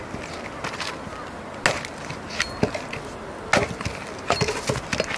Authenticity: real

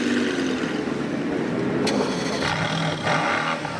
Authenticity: real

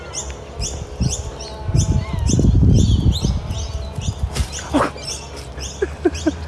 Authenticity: real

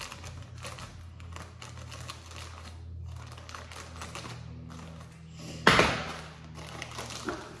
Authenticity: real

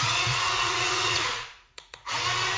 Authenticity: fake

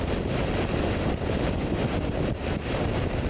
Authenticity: real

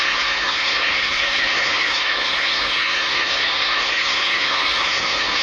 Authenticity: fake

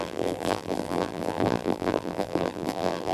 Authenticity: fake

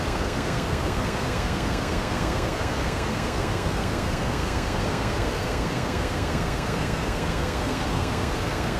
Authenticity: fake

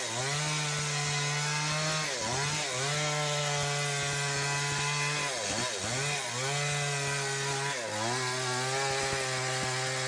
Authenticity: real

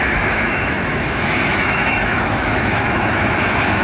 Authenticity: fake